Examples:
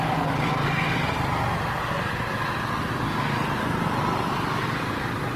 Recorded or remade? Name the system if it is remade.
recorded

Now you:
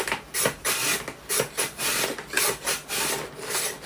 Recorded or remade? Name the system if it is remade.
recorded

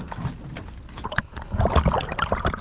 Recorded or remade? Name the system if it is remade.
recorded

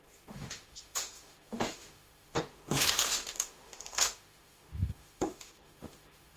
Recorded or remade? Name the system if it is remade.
remade, autoencoder, DAC-VAE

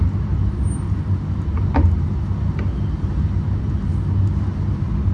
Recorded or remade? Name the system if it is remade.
recorded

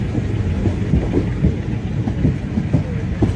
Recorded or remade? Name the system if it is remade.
recorded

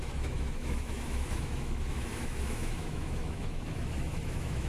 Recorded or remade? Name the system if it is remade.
remade, autoencoder, DAC-VAE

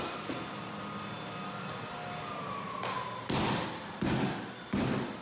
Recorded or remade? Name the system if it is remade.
recorded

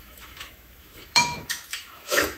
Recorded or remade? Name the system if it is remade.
remade, autoencoder, DAC-VAE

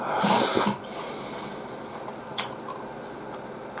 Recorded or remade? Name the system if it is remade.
recorded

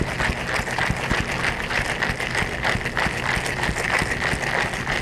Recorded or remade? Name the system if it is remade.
recorded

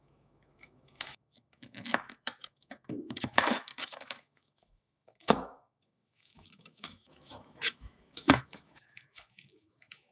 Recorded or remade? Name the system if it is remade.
remade, autoencoder, DAC-VAE